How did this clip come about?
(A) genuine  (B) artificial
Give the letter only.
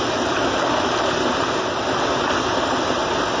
A